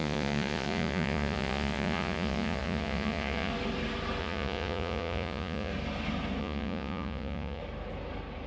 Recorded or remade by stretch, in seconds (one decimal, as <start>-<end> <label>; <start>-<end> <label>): 0.0-3.5 remade; 3.5-4.2 recorded; 4.2-5.7 remade; 5.7-6.4 recorded; 6.4-7.6 remade; 7.6-8.5 recorded